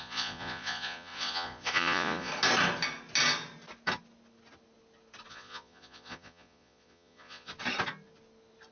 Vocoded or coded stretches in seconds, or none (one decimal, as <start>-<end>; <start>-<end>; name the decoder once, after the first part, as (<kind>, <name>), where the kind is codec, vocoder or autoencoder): 0.0-2.3 (vocoder, Vocos); 5.3-7.5